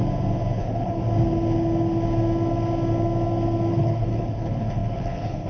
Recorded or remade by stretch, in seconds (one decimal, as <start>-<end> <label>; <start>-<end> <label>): 0.0-0.6 recorded; 0.6-1.0 remade; 1.0-3.7 recorded; 3.7-5.5 remade